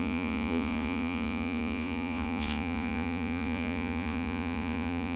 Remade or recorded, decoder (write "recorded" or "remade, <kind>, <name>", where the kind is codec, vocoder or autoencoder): remade, vocoder, Vocos